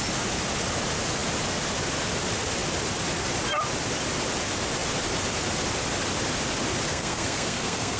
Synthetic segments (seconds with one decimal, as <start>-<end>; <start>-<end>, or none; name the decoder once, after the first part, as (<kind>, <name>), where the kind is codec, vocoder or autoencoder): 6.9-8.0 (codec, SNAC)